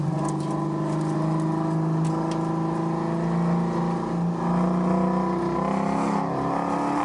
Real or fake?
real